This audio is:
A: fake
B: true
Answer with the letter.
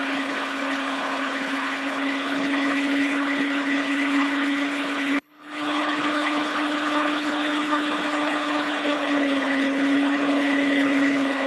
A